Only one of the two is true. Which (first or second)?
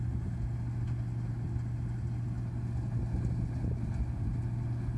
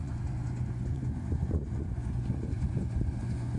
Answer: first